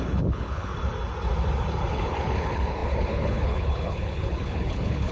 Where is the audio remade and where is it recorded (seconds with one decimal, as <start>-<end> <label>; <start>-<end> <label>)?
0.0-0.7 remade; 0.7-1.9 recorded; 1.9-5.1 remade